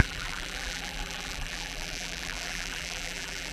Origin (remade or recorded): remade